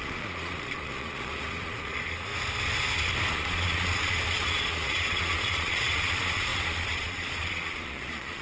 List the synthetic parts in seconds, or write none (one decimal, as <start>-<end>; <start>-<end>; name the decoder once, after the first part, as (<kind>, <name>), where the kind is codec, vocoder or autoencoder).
0.0-2.3 (vocoder, Vocos); 3.3-8.4